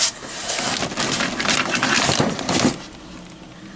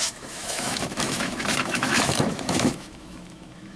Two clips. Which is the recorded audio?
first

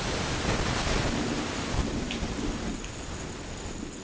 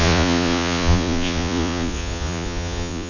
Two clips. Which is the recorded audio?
first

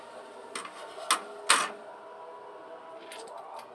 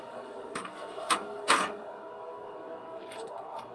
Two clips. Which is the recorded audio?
first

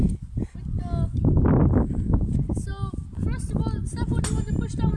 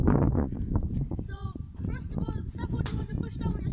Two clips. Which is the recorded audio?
first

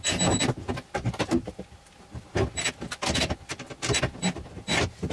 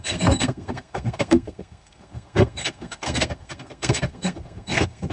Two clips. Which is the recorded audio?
first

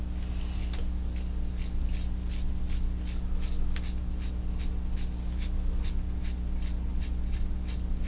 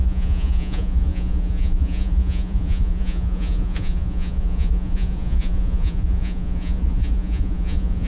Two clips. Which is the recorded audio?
first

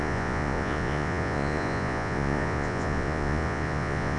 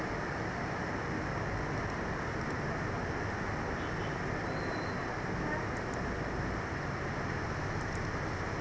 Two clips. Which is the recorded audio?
second